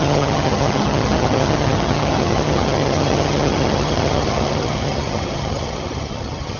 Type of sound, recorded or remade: remade